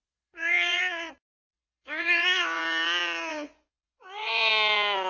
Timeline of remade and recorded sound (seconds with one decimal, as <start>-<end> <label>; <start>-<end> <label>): 0.0-1.1 remade; 1.1-1.5 recorded; 1.5-2.6 remade; 2.6-3.3 recorded; 3.3-4.5 remade; 4.5-5.1 recorded

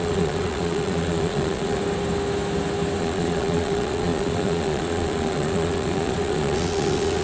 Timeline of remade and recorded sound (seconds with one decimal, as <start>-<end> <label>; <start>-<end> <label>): 0.0-1.8 remade; 1.8-3.0 recorded; 3.0-7.2 remade

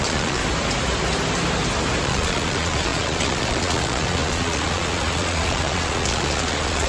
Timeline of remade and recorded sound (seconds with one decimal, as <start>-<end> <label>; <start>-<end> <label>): 0.0-0.4 remade; 0.4-2.0 recorded; 2.0-6.9 remade

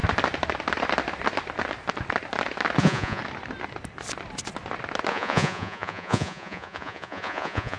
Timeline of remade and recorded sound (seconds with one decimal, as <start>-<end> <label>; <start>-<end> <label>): 0.0-2.8 recorded; 2.8-3.2 remade; 3.2-5.1 recorded; 5.1-7.8 remade